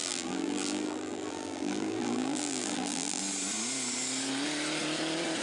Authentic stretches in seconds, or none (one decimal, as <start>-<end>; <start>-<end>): 3.2-5.4